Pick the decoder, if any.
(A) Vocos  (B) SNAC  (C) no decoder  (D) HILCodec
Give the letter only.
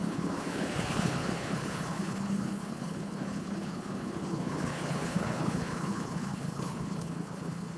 D